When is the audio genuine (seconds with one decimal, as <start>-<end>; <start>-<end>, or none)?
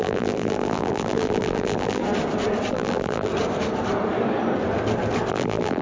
2.0-2.7; 3.3-5.3